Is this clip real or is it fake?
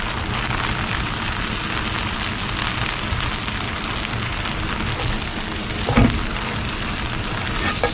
real